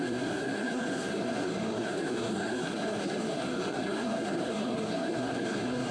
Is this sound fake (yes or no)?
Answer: yes